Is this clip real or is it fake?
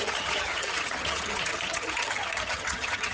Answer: fake